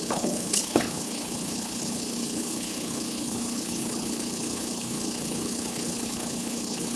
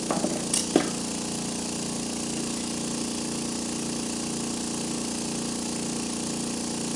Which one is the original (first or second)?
second